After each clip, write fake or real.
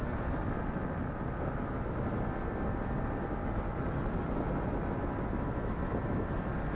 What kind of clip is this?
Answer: real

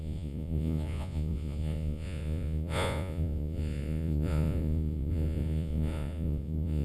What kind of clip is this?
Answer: fake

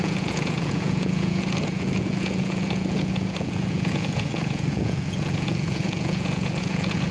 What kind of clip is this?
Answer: fake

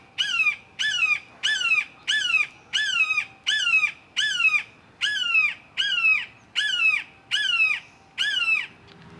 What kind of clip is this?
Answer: real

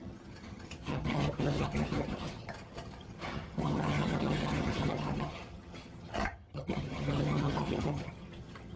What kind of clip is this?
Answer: fake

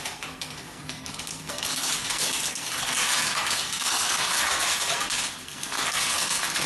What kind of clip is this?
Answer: fake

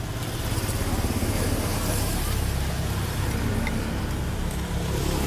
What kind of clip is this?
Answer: real